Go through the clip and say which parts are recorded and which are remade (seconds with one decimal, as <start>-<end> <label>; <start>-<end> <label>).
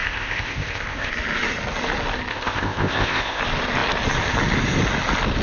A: 0.0-1.1 remade; 1.1-2.3 recorded; 2.3-3.4 remade; 3.4-5.4 recorded